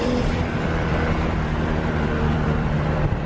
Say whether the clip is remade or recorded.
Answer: remade